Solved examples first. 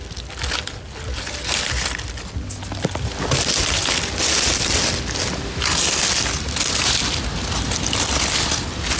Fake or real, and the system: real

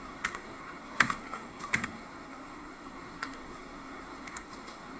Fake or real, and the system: fake, codec, SNAC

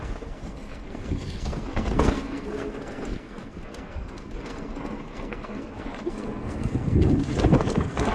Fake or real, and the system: fake, codec, SNAC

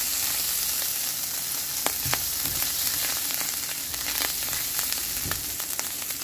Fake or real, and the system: real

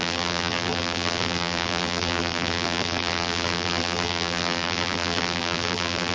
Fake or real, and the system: fake, vocoder, BigVGAN v2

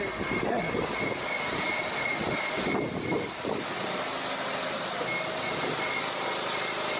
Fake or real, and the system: real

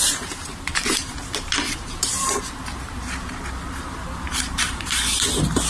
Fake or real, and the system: fake, vocoder, BigVGAN v2